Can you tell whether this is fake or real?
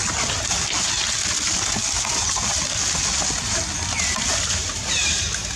real